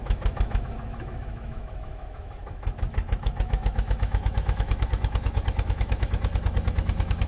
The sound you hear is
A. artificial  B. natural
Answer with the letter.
A